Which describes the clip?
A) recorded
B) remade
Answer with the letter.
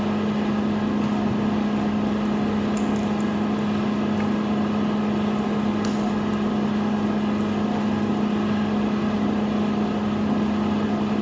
A